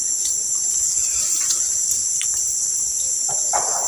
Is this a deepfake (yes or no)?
yes